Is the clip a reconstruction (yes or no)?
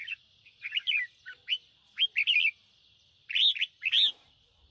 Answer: no